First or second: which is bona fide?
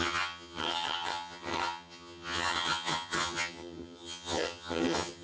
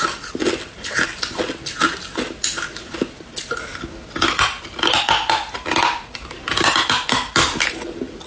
second